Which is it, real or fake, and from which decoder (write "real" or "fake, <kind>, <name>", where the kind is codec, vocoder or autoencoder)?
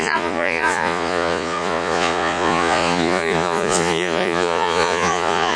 fake, vocoder, Vocos